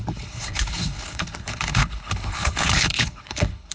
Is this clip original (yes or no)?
no